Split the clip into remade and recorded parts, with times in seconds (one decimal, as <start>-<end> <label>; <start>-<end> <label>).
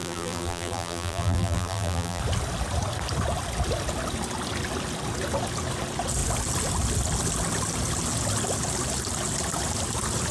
0.0-2.2 remade; 2.2-10.3 recorded